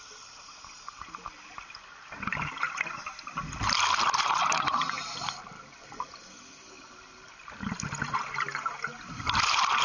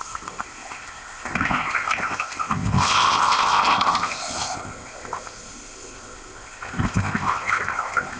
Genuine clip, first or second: first